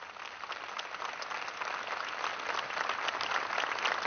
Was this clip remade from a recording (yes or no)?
no